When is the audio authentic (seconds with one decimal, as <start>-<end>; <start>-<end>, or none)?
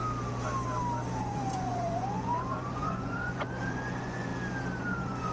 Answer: 0.0-1.2; 4.3-4.8